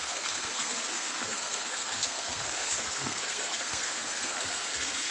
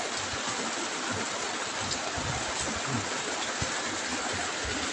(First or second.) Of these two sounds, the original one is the second